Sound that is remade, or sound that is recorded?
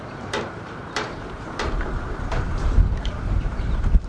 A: remade